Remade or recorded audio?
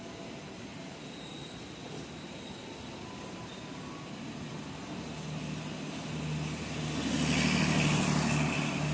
recorded